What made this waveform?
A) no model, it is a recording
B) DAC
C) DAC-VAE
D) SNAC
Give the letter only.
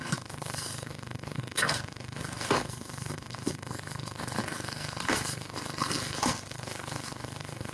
D